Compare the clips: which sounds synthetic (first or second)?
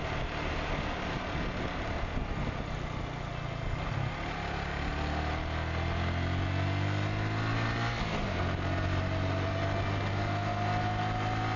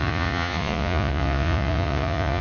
second